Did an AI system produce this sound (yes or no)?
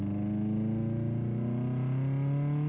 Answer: no